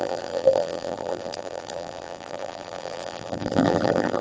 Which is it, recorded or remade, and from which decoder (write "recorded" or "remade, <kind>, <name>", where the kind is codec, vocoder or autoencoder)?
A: remade, vocoder, BigVGAN v2